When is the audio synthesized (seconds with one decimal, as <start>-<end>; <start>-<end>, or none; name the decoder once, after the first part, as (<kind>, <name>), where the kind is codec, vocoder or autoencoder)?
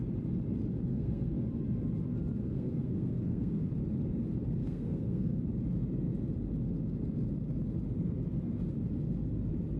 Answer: 0.9-1.5 (codec, SNAC); 2.4-3.7; 4.6-5.4